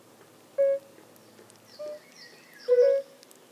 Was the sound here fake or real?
real